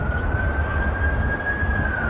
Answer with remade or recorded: recorded